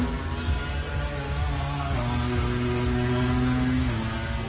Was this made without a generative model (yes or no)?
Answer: yes